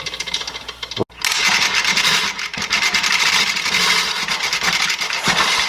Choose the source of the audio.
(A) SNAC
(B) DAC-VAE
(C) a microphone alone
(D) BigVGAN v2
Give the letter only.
C